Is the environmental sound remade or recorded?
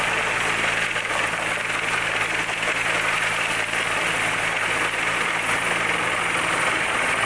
recorded